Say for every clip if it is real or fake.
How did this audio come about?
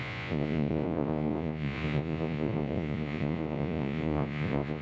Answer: fake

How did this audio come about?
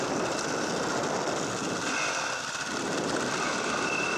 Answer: real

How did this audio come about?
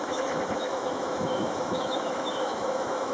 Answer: fake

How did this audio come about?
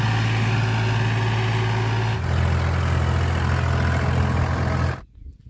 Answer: real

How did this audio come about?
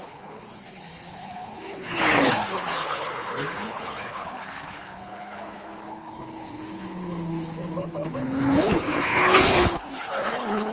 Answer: fake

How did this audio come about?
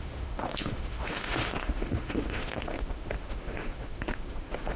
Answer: fake